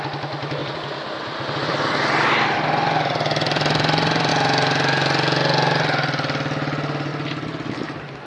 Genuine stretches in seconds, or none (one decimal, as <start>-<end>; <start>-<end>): 0.0-0.6; 4.3-7.1